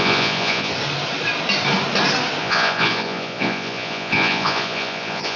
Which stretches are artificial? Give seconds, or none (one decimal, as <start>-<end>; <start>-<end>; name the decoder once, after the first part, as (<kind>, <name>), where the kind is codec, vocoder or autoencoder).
0.0-0.7 (vocoder, Vocos); 2.4-5.4